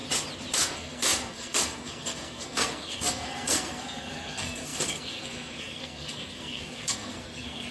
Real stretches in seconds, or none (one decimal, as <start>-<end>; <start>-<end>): 0.0-0.5